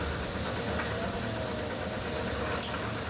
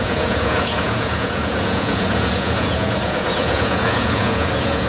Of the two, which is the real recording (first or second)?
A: first